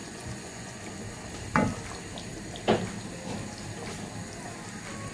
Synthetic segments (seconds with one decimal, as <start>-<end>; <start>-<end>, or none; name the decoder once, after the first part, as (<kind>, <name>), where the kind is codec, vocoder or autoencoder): 0.0-0.8 (vocoder, Vocos)